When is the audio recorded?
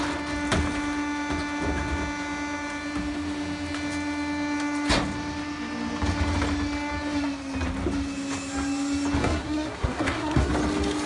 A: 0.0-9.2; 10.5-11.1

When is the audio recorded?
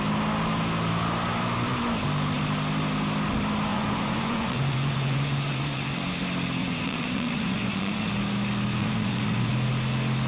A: 0.0-3.7; 6.0-6.6; 8.1-8.8; 9.5-10.3